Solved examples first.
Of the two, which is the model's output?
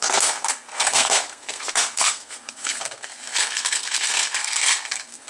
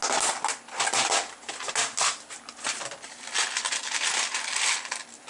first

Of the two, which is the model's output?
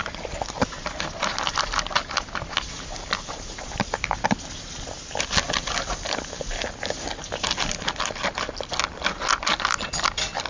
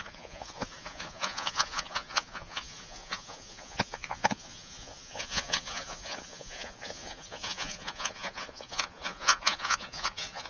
second